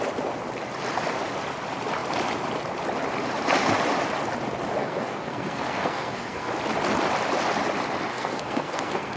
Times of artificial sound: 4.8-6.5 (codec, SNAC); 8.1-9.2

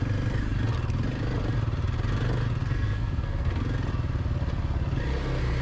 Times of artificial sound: 2.6-3.6 (codec, SNAC)

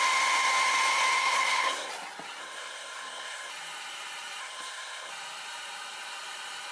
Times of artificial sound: 1.2-1.9 (codec, SNAC); 2.4-3.5; 4.4-5.1

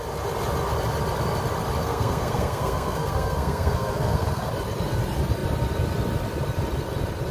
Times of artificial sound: 1.8-4.5 (codec, SNAC)

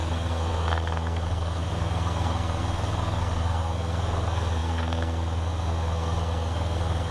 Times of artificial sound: 0.0-7.1 (codec, SNAC)